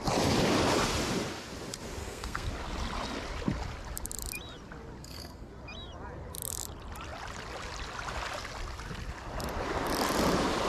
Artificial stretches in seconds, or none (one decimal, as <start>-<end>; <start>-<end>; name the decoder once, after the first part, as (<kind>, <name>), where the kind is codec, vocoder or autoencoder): 2.0-2.5 (codec, SNAC); 5.0-5.5